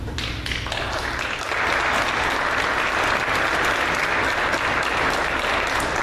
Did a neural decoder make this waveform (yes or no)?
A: no